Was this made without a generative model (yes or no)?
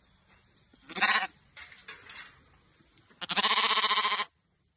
yes